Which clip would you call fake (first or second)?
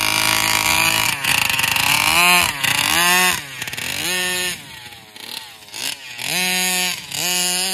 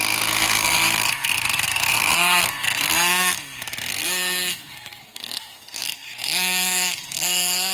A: second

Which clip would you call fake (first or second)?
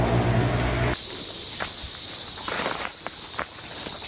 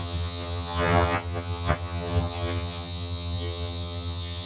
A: second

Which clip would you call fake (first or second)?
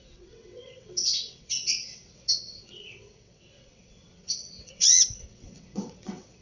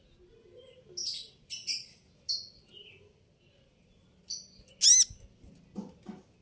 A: first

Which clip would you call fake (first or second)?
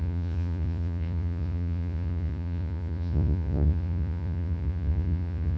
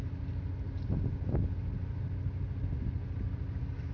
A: first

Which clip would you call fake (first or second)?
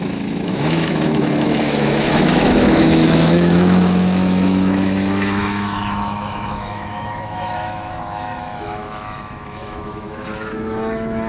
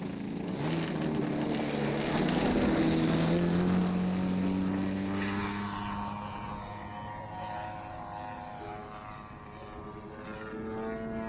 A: first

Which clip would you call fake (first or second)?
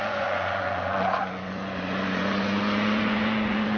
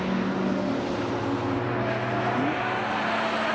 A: first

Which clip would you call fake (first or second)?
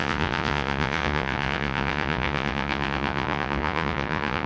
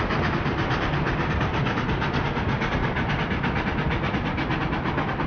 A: first